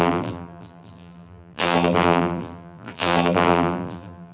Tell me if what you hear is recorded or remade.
remade